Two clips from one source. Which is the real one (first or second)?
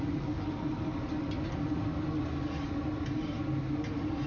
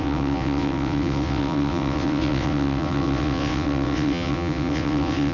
first